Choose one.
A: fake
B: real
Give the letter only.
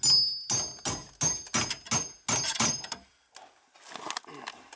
B